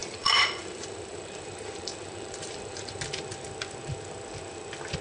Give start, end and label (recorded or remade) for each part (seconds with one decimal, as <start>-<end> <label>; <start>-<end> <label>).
0.0-3.0 remade; 3.0-5.0 recorded